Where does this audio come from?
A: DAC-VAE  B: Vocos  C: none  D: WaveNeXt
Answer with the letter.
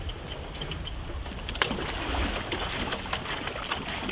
C